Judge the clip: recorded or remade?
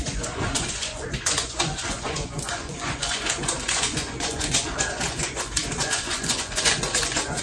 remade